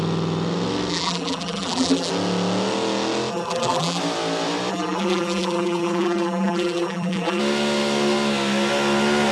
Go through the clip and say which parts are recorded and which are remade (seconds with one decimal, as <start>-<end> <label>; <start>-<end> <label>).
0.0-0.9 recorded; 0.9-2.1 remade; 2.1-3.3 recorded; 3.3-4.0 remade; 4.0-4.7 recorded; 4.7-7.4 remade; 7.4-9.3 recorded